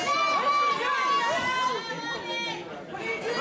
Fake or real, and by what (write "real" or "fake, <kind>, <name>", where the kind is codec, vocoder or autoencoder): real